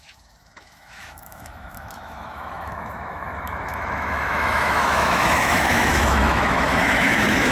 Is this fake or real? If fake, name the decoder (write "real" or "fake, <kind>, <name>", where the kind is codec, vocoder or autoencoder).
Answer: fake, autoencoder, DAC-VAE